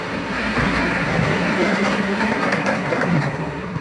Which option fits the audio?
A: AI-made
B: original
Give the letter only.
A